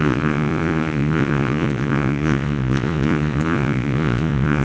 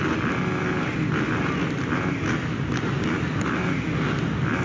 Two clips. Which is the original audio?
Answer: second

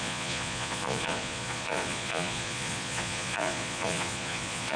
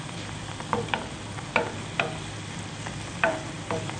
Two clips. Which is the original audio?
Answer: second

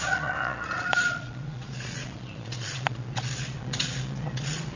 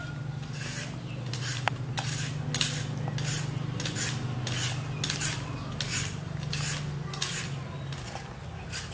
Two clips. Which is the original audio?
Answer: second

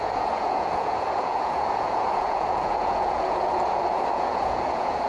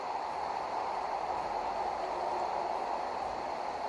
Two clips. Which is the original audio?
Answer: second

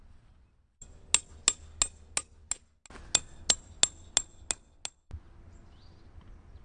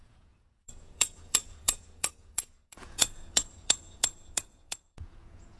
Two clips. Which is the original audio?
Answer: first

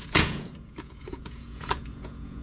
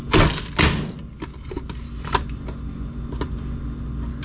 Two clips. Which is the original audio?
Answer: second